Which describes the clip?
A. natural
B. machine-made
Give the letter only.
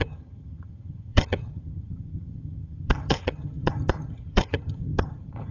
B